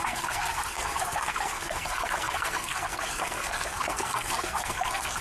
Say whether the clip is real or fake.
fake